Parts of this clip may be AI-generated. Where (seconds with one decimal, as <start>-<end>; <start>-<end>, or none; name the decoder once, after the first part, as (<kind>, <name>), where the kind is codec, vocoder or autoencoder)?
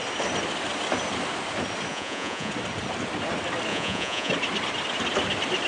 1.9-2.5 (vocoder, Vocos); 3.7-4.3